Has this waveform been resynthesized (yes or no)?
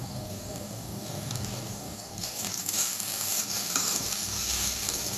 yes